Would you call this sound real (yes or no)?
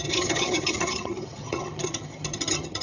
no